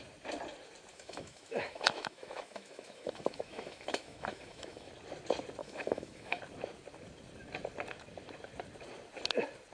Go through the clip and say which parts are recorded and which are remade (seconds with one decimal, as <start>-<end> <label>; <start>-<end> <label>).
0.0-0.9 recorded; 0.9-4.9 remade; 4.9-5.6 recorded; 5.6-6.4 remade; 6.4-9.7 recorded